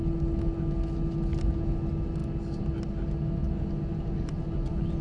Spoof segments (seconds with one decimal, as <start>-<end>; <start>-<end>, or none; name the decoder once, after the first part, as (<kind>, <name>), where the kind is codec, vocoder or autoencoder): none